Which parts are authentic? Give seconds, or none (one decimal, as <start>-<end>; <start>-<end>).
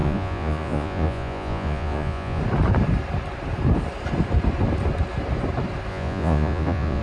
2.4-5.9